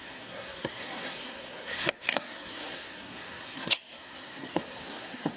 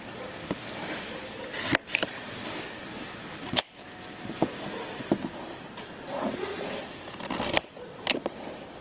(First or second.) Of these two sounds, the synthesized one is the first